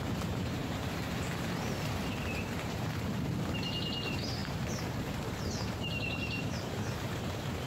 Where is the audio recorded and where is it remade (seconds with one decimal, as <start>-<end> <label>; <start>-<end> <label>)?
0.0-7.7 remade